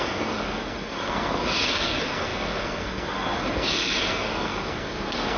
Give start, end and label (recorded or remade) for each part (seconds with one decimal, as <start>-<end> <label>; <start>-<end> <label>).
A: 0.0-5.4 remade